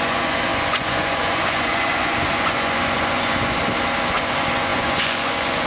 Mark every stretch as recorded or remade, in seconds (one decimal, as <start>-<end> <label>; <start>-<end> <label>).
0.0-3.6 remade; 3.6-4.1 recorded; 4.1-5.7 remade